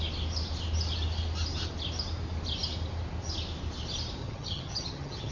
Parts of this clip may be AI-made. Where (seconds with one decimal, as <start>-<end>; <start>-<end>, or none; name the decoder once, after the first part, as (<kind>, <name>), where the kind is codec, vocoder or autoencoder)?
4.2-5.3 (vocoder, HiFi-GAN)